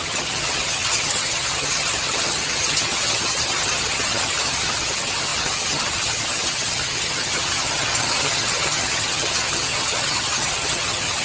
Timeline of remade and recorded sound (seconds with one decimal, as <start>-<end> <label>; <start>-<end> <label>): 0.0-11.2 remade